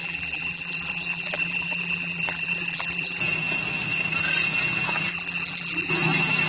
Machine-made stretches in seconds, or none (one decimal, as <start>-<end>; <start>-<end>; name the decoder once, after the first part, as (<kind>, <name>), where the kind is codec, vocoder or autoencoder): 0.0-3.2 (vocoder, BigVGAN v2); 5.1-5.9